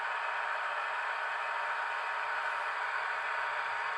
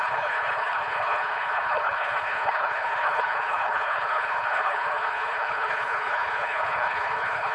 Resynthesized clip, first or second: second